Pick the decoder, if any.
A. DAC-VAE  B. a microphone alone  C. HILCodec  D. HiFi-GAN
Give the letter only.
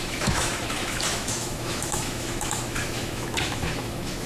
A